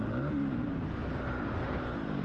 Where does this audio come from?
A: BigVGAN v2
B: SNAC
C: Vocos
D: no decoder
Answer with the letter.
A